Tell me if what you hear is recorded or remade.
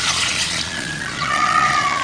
remade